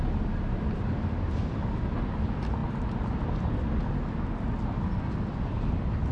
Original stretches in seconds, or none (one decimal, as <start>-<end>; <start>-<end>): 0.0-6.1